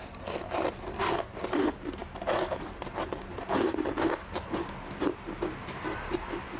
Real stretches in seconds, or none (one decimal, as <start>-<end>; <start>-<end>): 0.0-6.6